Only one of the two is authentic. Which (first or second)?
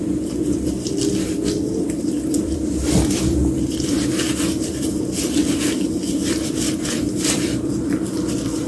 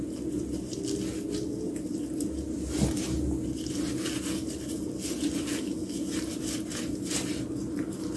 second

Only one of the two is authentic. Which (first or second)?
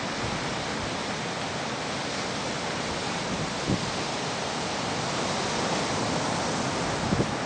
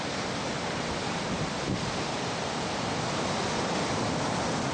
first